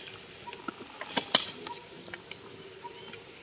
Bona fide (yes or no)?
yes